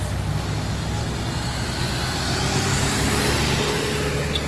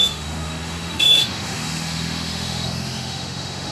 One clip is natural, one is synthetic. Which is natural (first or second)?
first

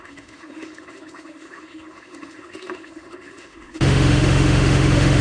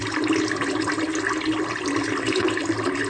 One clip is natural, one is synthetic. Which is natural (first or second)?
second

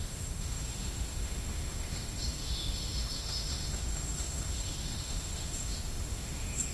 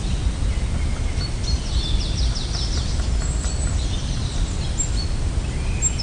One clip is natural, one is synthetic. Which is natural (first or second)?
second